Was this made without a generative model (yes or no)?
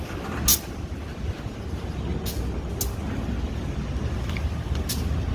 yes